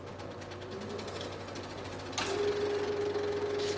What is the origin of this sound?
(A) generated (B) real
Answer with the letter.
B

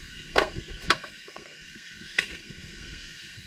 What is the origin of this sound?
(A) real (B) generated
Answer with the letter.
B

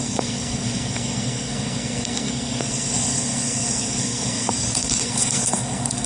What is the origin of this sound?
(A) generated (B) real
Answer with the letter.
A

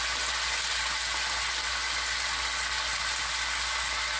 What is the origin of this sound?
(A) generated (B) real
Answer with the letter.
B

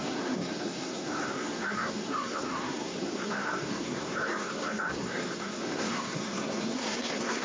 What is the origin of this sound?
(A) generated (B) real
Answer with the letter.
A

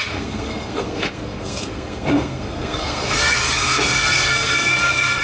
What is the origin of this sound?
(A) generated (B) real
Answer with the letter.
A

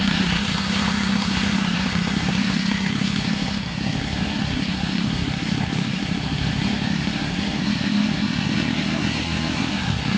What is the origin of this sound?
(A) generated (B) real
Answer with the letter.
A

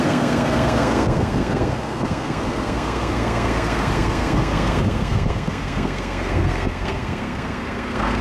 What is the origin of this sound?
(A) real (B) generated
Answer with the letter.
B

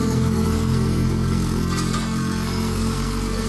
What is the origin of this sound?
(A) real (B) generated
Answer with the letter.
B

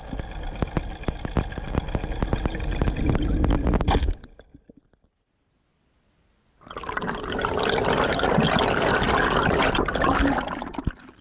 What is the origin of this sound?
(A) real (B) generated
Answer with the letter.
A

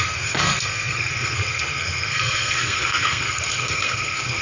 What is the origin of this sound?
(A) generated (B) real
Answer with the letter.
A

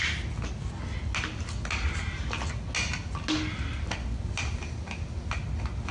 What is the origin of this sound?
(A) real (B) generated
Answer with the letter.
A